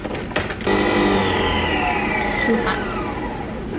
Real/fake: real